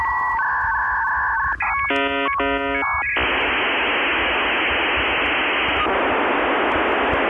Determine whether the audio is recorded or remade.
recorded